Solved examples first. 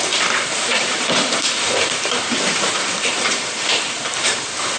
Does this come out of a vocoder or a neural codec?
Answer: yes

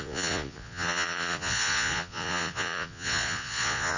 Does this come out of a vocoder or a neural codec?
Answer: yes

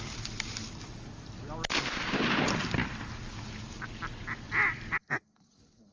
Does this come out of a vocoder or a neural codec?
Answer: no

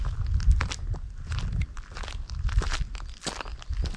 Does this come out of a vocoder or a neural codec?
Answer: no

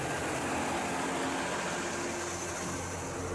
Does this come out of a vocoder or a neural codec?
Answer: no